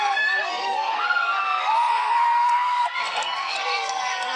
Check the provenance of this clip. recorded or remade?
remade